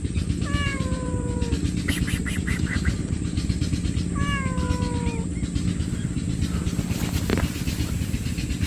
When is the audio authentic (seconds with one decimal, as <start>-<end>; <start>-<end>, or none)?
0.0-0.7; 1.5-2.2; 3.7-8.7